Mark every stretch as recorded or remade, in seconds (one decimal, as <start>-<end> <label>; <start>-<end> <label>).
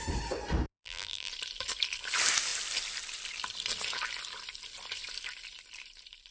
0.0-0.7 recorded; 0.7-1.3 remade; 1.3-6.3 recorded